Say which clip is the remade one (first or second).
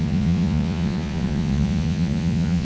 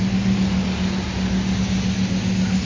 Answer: first